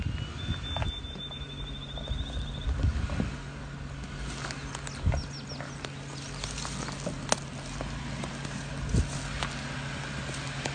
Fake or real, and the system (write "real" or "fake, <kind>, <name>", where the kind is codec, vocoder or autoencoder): real